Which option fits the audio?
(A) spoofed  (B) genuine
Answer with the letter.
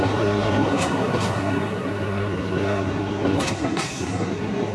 A